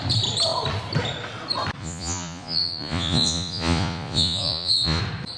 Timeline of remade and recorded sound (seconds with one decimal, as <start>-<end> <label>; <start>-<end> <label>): 0.0-1.8 recorded; 1.8-5.0 remade; 5.0-5.4 recorded